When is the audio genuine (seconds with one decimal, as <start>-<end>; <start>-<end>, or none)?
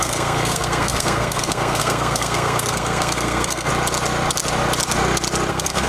3.7-5.5